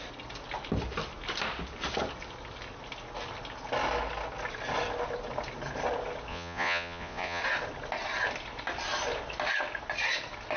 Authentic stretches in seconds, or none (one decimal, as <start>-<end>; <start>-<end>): 0.0-6.3; 7.4-10.6